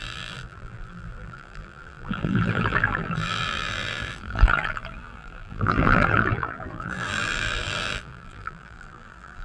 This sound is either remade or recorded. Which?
remade